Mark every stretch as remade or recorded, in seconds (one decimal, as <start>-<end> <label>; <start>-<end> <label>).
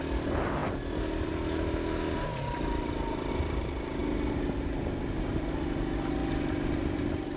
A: 0.0-2.3 recorded; 2.3-3.3 remade; 3.3-4.0 recorded; 4.0-5.3 remade; 5.3-6.2 recorded; 6.2-7.4 remade